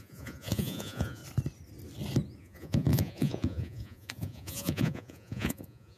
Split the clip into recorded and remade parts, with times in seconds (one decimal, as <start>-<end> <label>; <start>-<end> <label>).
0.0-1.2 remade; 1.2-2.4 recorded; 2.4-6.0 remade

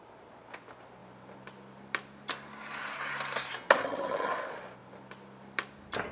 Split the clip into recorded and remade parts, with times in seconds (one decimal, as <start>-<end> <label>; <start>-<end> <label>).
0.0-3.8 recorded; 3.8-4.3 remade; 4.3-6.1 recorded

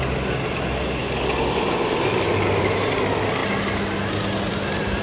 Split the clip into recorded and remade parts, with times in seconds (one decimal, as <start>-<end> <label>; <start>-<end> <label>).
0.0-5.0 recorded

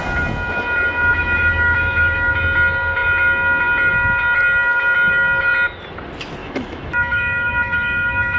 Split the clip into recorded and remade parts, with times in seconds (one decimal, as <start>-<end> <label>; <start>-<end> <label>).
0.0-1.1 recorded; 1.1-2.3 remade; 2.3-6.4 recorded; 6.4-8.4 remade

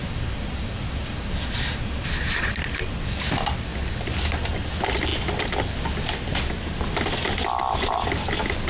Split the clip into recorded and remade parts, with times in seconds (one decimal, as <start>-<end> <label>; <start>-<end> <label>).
0.0-8.7 recorded